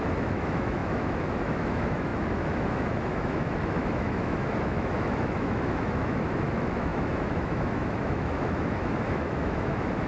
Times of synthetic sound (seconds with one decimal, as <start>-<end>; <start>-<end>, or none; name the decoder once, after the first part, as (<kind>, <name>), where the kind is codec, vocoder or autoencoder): 0.0-10.1 (autoencoder, DAC-VAE)